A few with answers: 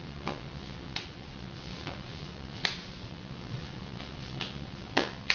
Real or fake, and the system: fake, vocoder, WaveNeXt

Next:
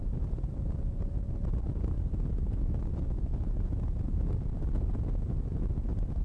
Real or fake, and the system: real